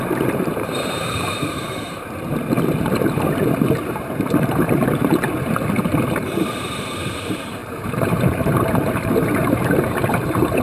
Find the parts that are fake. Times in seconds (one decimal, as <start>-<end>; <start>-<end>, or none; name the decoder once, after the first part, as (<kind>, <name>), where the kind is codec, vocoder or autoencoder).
0.0-10.6 (vocoder, BigVGAN v2)